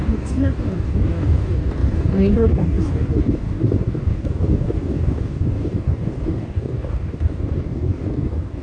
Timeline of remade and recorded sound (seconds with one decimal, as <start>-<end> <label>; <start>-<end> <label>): 0.0-8.6 remade

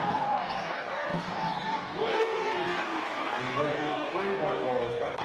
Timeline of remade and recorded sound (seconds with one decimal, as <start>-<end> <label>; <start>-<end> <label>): 0.0-5.2 remade

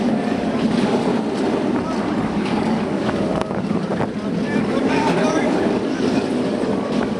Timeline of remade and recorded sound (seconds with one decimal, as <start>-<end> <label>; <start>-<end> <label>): 0.0-1.1 remade; 1.1-2.0 recorded; 2.0-3.9 remade; 3.9-4.6 recorded; 4.6-7.2 remade

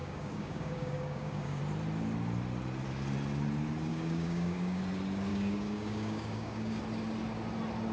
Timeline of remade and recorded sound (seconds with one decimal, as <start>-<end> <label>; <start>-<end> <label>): 0.0-1.6 remade; 1.6-3.9 recorded; 3.9-4.8 remade; 4.8-5.3 recorded; 5.3-6.8 remade; 6.8-7.9 recorded

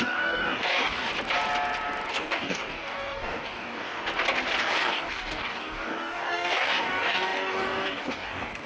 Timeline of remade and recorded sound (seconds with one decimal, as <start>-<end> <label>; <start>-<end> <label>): 0.0-1.1 remade; 1.1-2.1 recorded; 2.1-4.0 remade; 4.0-4.6 recorded; 4.6-8.7 remade

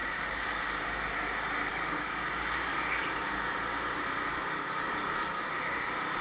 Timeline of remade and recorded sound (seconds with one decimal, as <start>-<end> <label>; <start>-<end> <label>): 0.0-0.6 remade; 0.6-1.7 recorded; 1.7-3.0 remade; 3.0-4.3 recorded; 4.3-5.5 remade; 5.5-6.2 recorded

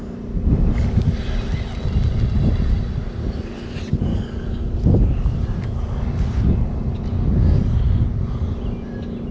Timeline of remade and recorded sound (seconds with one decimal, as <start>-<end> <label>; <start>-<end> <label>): 0.0-4.1 recorded; 4.1-4.7 remade; 4.7-9.3 recorded